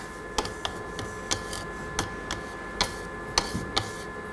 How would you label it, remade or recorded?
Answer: recorded